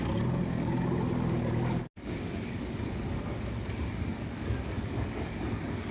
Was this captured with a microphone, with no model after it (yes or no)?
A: no